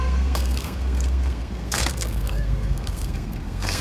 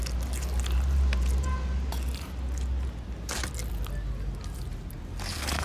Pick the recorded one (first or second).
second